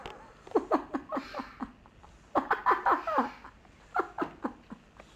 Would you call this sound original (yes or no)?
yes